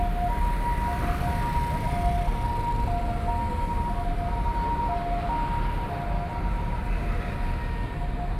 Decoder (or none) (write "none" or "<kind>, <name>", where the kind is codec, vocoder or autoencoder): none